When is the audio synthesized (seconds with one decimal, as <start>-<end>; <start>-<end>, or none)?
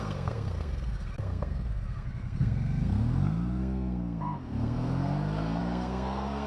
0.0-6.5